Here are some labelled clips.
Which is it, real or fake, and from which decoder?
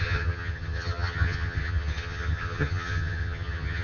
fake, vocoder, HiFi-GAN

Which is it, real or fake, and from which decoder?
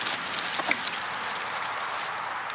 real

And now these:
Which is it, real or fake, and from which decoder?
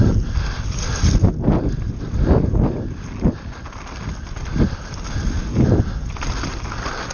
real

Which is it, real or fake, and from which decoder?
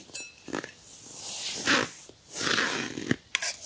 real